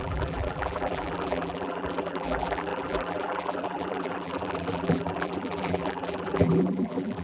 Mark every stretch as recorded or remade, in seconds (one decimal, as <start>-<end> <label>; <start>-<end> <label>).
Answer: 0.0-7.2 remade